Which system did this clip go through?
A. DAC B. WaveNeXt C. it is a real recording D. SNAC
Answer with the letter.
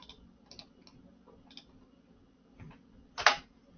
C